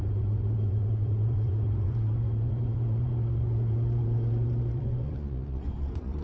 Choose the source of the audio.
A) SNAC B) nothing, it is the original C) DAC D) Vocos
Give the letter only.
D